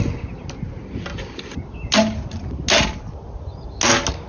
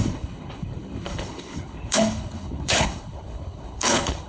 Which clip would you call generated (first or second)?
second